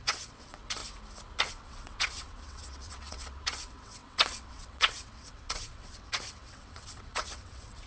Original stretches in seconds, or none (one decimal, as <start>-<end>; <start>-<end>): 0.8-1.5